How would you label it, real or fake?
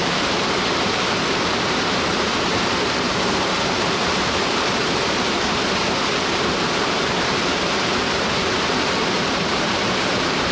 fake